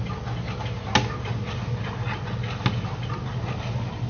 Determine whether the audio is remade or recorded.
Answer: recorded